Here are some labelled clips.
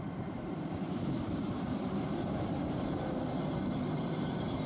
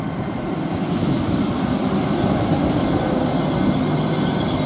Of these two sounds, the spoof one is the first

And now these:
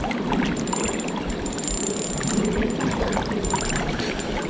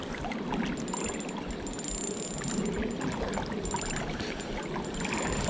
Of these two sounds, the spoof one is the first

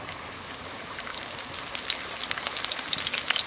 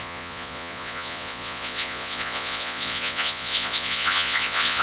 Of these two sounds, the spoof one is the second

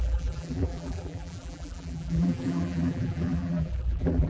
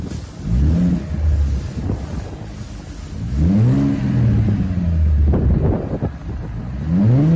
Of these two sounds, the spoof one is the first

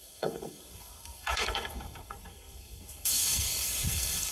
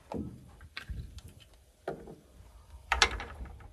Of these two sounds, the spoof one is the first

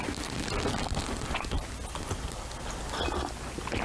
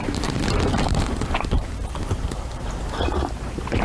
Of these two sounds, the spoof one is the second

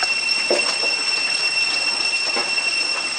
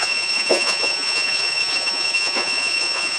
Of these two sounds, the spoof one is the second